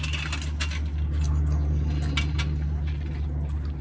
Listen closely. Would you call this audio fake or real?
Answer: real